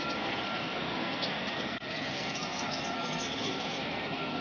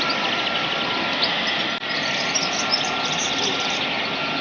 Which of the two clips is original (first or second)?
second